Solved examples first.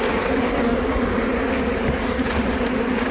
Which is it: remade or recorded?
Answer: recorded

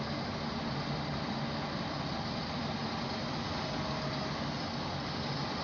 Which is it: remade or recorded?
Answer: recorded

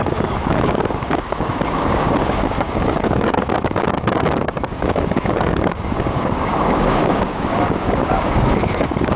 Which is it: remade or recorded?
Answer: remade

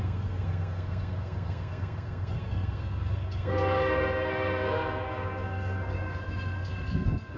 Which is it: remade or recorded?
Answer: remade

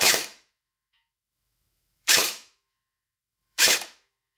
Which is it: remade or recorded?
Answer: remade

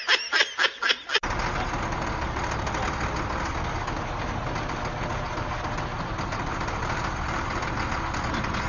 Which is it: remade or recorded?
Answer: recorded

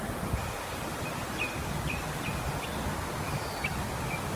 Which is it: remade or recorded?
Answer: recorded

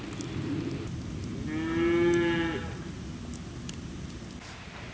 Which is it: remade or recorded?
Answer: recorded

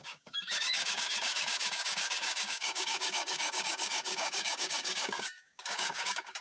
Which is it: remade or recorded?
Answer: remade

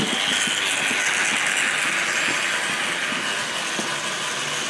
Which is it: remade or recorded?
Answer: recorded